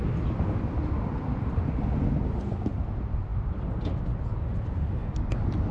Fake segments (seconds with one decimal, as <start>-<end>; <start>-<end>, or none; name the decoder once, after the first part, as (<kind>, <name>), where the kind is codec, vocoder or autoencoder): none